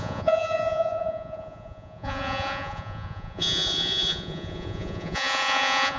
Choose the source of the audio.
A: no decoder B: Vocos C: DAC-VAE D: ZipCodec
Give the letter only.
B